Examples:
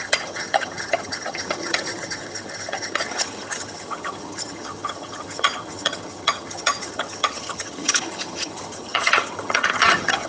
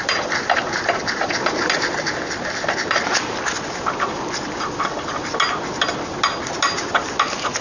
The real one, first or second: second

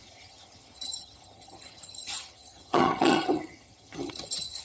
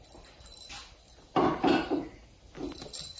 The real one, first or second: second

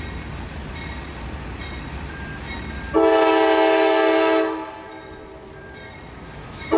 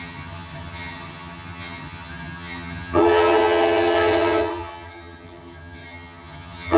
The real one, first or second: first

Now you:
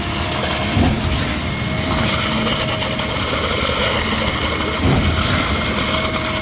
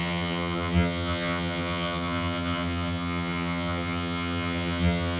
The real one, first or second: first